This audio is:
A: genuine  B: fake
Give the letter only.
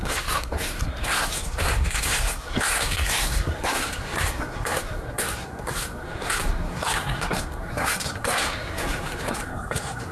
B